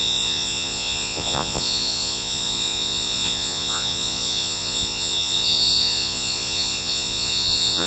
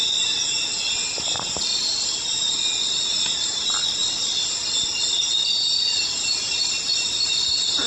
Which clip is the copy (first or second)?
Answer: first